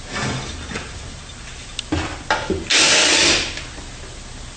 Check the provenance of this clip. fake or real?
real